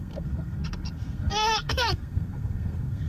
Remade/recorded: remade